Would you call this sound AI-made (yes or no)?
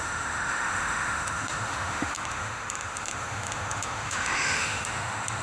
yes